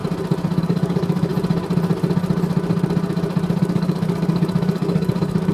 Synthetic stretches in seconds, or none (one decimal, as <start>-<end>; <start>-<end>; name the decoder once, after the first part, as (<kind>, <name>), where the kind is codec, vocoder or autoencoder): 0.6-1.3 (codec, DAC); 3.6-5.5